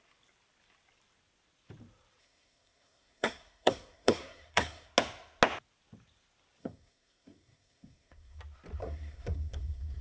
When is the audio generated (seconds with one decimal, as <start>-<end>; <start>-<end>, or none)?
2.2-4.9; 6.6-8.4; 8.8-10.0